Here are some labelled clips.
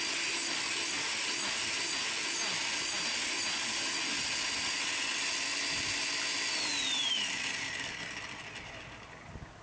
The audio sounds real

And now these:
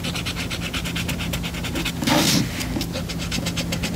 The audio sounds real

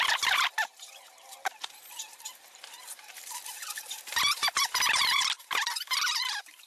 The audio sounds fake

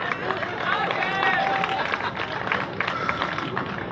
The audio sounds real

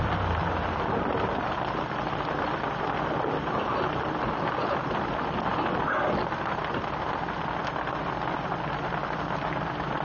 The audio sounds real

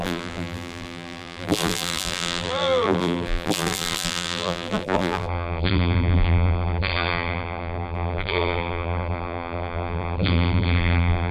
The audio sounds fake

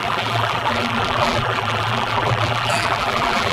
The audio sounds fake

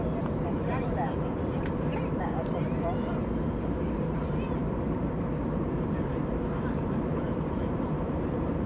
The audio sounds fake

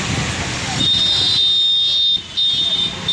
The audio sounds real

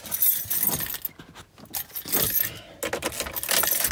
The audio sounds real